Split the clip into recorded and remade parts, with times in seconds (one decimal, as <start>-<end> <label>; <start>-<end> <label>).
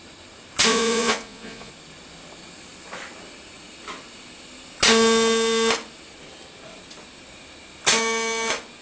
0.0-0.7 recorded; 0.7-1.7 remade; 1.7-8.8 recorded